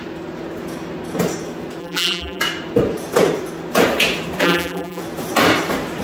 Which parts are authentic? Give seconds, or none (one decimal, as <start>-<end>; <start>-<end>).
0.0-1.8; 2.4-4.4; 5.0-6.0